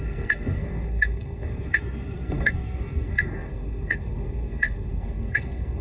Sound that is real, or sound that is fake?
fake